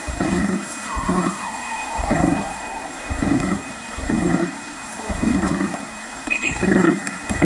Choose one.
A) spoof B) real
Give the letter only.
A